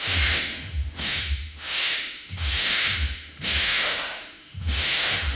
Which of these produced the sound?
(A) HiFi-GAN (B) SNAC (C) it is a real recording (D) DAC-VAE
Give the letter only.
D